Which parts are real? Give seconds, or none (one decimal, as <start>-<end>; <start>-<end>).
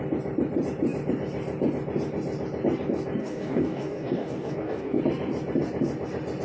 0.0-3.2; 5.0-6.4